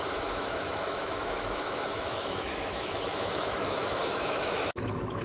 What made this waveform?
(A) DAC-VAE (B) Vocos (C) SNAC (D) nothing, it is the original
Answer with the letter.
A